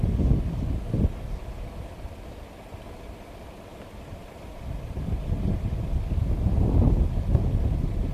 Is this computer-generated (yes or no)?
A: no